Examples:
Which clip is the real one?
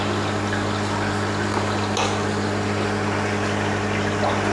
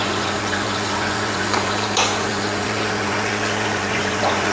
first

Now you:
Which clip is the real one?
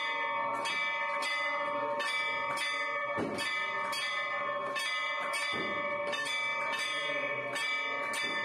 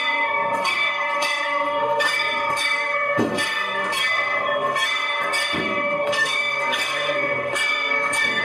first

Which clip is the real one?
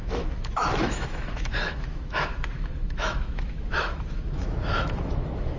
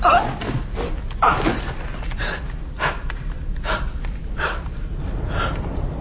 second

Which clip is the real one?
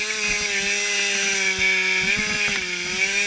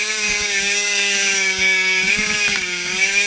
first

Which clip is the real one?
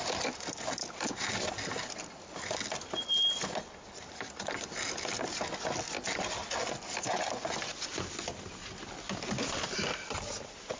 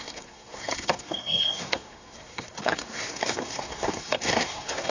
first